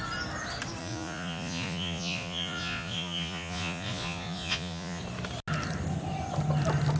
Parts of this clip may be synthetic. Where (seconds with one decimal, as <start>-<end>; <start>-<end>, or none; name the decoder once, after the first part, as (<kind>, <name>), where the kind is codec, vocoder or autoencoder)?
0.8-5.0 (vocoder, Vocos)